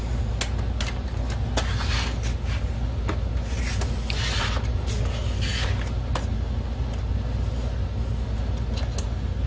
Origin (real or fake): real